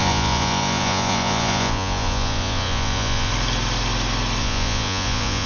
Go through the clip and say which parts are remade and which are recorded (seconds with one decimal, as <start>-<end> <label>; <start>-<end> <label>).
0.0-3.3 remade; 3.3-4.4 recorded; 4.4-5.5 remade